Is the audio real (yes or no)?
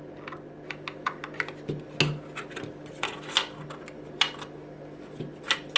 yes